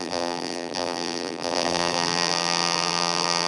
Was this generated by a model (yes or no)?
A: yes